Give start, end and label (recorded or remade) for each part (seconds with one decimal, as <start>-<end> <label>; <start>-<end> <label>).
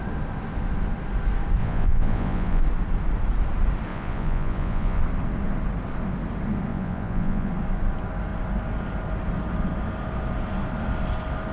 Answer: 0.0-1.6 recorded; 1.6-2.6 remade; 2.6-3.9 recorded; 3.9-5.0 remade; 5.0-6.7 recorded; 6.7-7.5 remade; 7.5-11.5 recorded